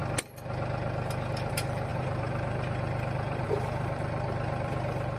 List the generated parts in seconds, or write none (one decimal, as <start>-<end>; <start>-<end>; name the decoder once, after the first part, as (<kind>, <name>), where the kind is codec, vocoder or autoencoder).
1.5-5.2 (vocoder, BigVGAN v2)